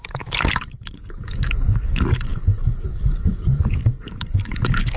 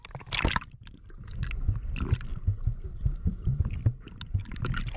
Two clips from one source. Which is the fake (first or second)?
first